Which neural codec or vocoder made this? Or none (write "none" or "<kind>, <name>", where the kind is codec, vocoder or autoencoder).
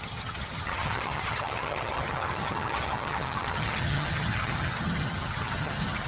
vocoder, HiFi-GAN